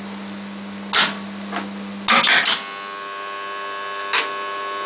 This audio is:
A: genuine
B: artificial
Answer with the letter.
A